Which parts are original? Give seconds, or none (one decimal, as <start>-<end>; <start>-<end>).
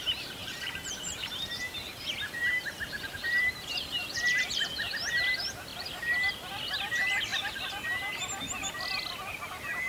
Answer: 0.0-0.4; 4.5-9.9